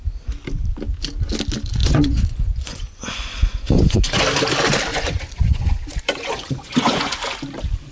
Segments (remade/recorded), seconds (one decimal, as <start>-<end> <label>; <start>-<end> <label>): 0.0-1.8 recorded; 1.8-4.2 remade; 4.2-4.9 recorded; 4.9-7.1 remade; 7.1-7.9 recorded